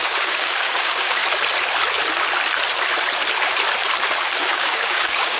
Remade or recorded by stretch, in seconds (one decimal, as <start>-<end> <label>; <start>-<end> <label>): 0.0-1.2 remade; 1.2-4.4 recorded; 4.4-5.4 remade